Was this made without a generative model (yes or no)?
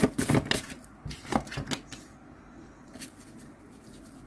yes